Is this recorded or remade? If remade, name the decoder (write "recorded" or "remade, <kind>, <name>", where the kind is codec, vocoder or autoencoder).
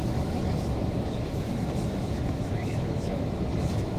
remade, autoencoder, DAC-VAE